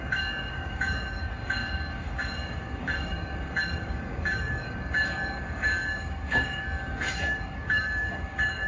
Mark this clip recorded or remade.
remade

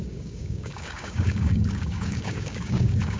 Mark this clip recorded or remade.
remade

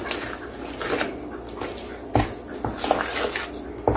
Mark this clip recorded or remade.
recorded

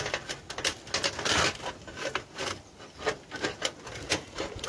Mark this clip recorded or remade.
recorded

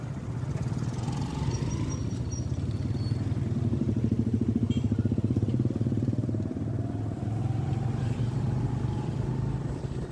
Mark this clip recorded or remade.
recorded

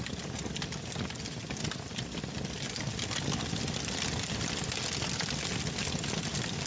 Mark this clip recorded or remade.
recorded